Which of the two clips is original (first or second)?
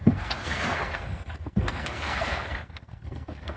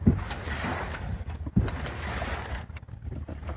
second